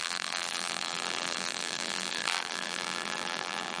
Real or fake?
fake